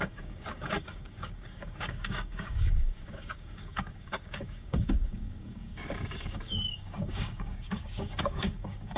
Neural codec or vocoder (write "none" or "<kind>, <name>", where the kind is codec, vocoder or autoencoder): codec, DAC